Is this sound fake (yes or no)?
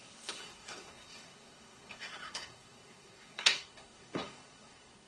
yes